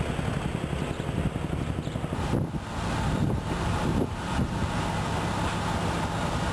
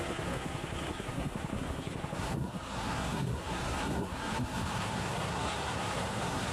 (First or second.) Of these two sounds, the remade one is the second